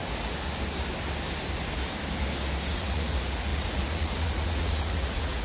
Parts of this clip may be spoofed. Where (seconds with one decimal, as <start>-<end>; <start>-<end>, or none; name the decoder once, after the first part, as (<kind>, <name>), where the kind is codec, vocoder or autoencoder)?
2.7-5.4 (vocoder, Vocos)